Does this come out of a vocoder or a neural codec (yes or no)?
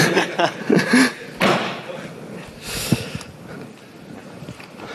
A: no